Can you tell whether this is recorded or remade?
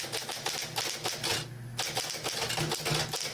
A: recorded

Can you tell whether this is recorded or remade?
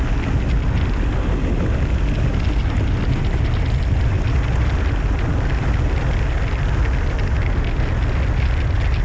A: recorded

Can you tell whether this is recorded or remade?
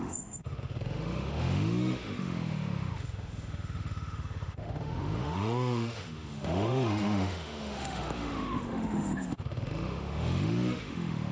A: remade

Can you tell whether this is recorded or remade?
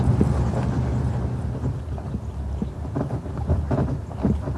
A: recorded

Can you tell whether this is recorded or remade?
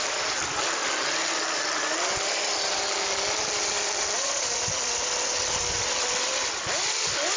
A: recorded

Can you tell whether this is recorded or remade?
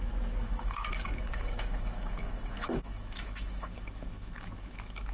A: remade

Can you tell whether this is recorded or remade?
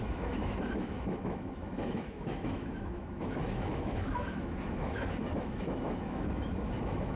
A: remade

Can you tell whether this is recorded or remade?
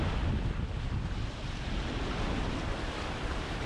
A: recorded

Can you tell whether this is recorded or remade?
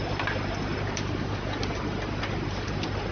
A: recorded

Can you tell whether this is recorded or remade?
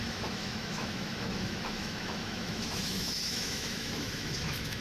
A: remade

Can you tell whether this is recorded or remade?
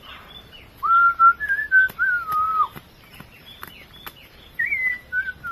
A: recorded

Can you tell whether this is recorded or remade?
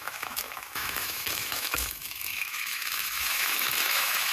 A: remade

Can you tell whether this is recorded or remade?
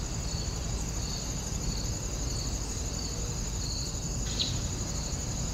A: recorded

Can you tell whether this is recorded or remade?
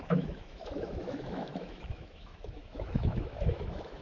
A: remade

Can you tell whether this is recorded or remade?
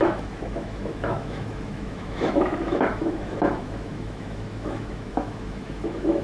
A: remade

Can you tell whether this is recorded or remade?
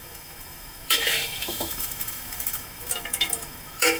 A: remade